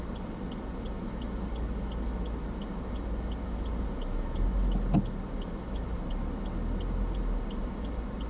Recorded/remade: recorded